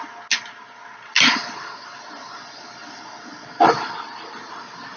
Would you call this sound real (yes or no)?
yes